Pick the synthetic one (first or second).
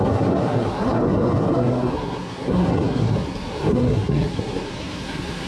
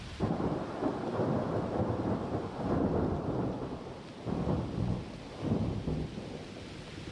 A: first